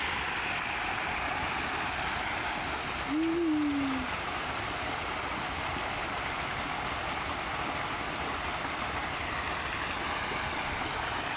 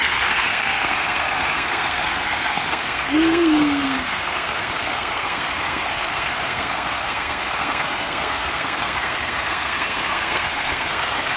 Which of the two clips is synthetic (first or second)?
second